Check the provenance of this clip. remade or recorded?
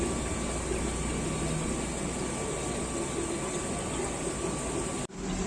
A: recorded